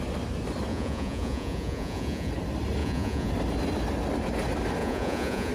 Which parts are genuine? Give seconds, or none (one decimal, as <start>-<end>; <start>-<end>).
0.0-0.7; 2.3-2.8; 3.3-4.8